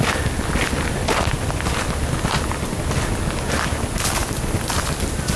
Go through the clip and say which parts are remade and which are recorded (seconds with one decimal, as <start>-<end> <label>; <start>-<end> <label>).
0.0-5.4 remade